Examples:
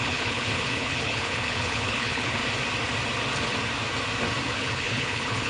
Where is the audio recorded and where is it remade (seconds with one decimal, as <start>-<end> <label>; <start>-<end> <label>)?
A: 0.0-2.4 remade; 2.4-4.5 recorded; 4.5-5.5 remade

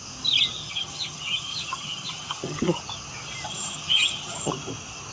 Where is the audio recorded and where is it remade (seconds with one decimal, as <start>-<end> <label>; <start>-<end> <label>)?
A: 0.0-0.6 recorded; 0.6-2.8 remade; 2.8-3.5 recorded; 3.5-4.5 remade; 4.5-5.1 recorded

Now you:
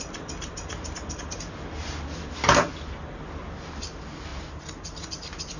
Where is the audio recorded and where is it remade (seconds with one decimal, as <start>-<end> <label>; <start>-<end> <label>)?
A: 0.0-5.6 recorded

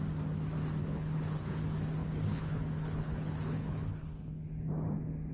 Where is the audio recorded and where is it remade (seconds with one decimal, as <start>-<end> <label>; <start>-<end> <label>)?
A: 0.0-0.8 recorded; 0.8-1.6 remade; 1.6-2.0 recorded; 2.0-4.7 remade; 4.7-5.3 recorded

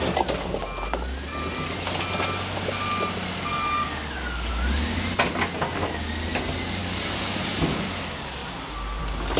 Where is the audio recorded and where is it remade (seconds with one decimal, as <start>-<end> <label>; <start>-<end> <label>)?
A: 0.0-3.5 recorded; 3.5-4.5 remade; 4.5-6.8 recorded; 6.8-7.4 remade; 7.4-9.4 recorded